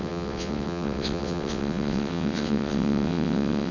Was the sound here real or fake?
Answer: fake